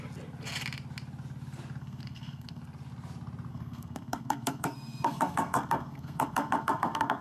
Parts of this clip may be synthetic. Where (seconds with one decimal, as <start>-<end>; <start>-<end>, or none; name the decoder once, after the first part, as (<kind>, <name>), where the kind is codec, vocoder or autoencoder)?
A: 1.8-2.6 (codec, SNAC); 3.5-7.2